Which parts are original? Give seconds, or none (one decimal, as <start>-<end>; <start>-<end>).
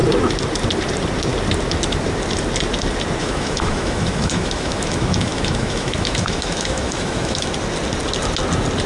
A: 0.0-3.2; 7.5-8.9